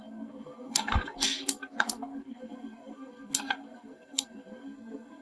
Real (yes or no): no